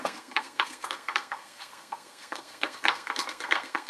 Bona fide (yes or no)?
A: no